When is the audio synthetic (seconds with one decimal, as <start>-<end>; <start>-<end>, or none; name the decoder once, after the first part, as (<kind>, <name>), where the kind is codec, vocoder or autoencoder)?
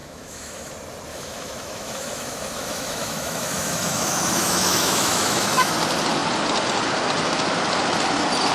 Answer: 0.0-0.7 (autoencoder, DAC-VAE); 1.1-5.7